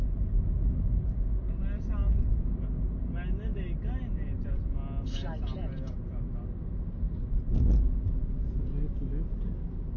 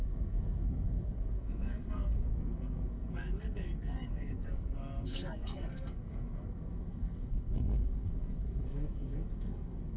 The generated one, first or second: second